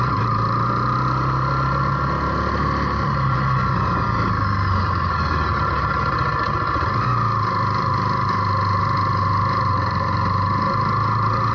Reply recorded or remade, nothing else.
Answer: recorded